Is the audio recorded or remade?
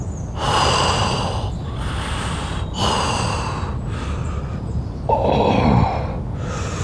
recorded